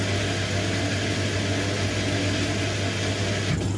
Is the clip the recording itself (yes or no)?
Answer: yes